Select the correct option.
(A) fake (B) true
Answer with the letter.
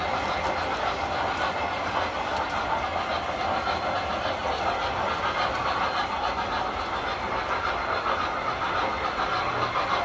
B